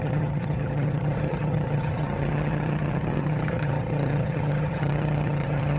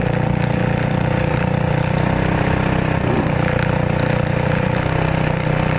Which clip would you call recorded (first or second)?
second